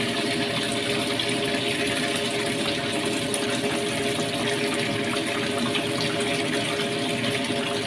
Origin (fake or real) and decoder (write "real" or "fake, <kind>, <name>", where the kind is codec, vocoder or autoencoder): real